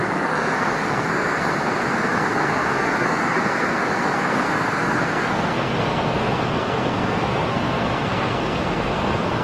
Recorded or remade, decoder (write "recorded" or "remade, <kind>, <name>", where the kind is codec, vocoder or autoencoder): remade, codec, SNAC